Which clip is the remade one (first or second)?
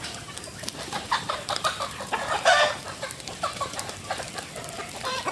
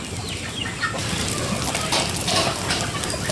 first